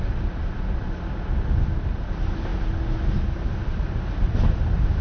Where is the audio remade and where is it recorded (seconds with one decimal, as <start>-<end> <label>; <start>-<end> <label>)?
0.0-5.0 recorded

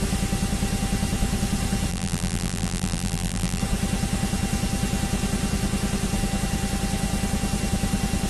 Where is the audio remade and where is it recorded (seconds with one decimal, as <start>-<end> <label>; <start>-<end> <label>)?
0.0-1.9 recorded; 1.9-3.6 remade; 3.6-8.3 recorded

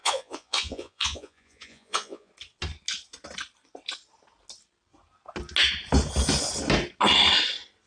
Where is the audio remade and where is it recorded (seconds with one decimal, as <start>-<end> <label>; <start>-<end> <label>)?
0.0-2.3 remade; 2.3-7.9 recorded

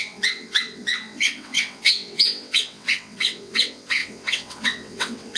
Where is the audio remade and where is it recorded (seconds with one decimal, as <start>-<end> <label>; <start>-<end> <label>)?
0.0-5.4 remade

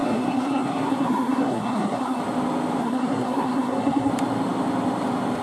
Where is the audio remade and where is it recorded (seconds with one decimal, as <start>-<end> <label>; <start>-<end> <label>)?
0.0-2.2 remade; 2.2-2.8 recorded; 2.8-4.1 remade; 4.1-5.4 recorded

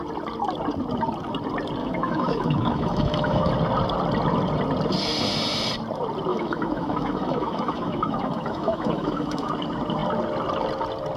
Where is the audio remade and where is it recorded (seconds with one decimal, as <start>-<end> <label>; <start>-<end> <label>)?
0.0-1.8 recorded; 1.8-3.5 remade; 3.5-6.3 recorded; 6.3-9.5 remade; 9.5-11.2 recorded